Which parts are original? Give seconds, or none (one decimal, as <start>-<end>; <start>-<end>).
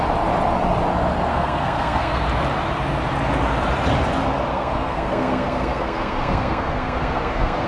0.0-1.3; 2.2-4.5